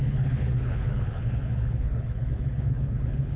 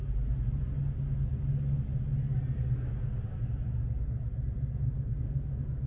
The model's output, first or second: first